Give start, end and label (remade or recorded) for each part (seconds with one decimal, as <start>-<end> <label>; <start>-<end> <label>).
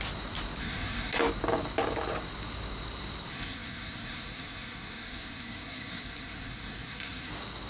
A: 0.0-0.6 recorded; 0.6-1.2 remade; 1.2-3.3 recorded; 3.3-7.3 remade; 7.3-7.7 recorded